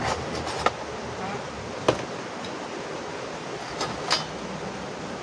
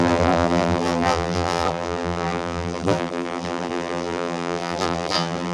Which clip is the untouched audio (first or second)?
first